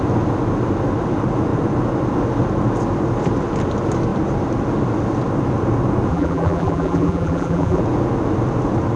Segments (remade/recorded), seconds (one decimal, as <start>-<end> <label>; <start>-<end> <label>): 0.0-6.1 recorded; 6.1-7.8 remade; 7.8-9.0 recorded